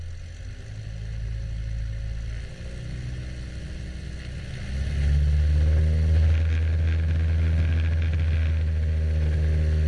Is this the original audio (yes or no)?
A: yes